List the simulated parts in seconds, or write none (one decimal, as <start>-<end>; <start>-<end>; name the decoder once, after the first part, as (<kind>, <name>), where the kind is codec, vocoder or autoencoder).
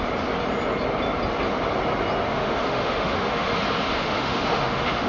2.3-3.5 (autoencoder, DAC-VAE); 3.9-5.1